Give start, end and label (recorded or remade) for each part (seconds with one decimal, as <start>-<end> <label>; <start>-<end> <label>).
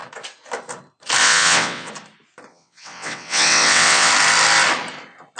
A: 0.0-1.2 recorded; 1.2-1.9 remade; 1.9-2.5 recorded; 2.5-4.1 remade; 4.1-5.4 recorded